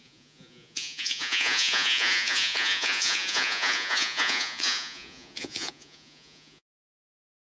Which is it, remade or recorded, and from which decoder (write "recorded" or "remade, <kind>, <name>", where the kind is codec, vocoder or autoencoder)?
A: remade, vocoder, Vocos